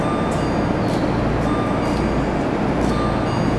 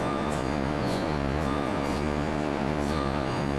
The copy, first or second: second